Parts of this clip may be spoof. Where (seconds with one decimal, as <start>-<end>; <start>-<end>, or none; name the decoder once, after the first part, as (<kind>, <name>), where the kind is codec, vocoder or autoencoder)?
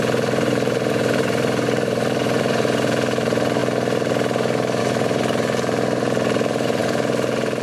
0.0-3.6 (vocoder, BigVGAN v2); 4.8-7.6